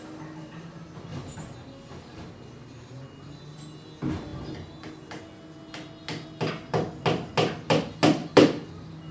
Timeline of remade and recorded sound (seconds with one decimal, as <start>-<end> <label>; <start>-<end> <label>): 0.0-8.2 recorded; 8.2-9.1 remade